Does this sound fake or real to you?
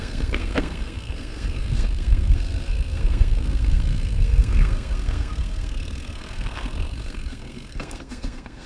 fake